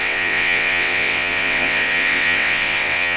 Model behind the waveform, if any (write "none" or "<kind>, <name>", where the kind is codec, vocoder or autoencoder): vocoder, WaveNeXt